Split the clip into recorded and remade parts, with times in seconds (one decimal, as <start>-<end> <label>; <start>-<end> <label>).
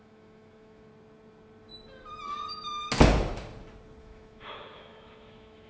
0.0-0.9 remade; 0.9-4.0 recorded; 4.0-5.7 remade